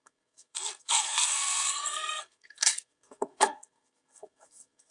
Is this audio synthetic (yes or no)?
yes